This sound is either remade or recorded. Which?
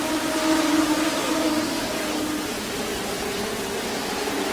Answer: recorded